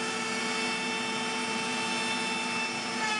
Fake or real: real